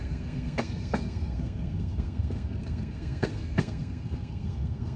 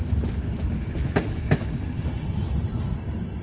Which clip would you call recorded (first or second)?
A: second